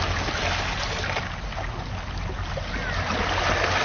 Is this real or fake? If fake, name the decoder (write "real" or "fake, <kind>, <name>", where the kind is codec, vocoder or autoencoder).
real